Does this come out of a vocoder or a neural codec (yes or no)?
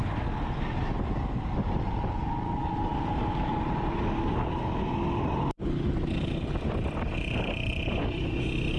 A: no